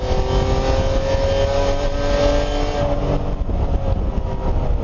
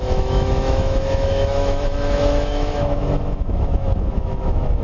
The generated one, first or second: second